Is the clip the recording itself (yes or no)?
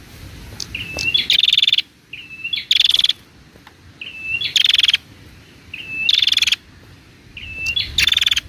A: yes